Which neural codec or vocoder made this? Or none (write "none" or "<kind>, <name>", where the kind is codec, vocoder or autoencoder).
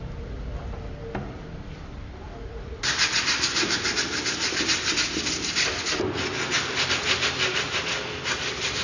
vocoder, BigVGAN v2